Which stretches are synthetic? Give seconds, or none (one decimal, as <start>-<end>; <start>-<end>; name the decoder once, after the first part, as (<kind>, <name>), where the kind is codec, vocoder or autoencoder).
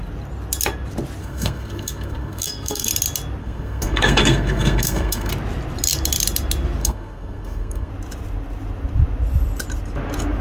1.2-2.9 (codec, SNAC); 3.4-5.3; 6.8-7.9